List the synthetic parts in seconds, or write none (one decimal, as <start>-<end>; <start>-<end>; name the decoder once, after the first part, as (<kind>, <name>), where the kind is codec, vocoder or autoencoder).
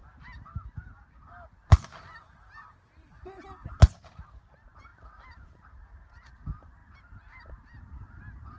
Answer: 1.0-8.6 (vocoder, BigVGAN v2)